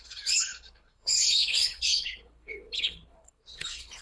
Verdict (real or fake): fake